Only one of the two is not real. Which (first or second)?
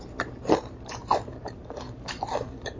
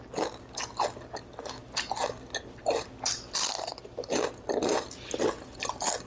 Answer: first